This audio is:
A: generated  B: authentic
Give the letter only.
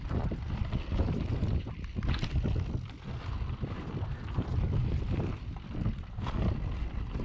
B